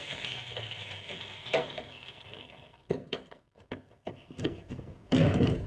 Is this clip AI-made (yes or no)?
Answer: yes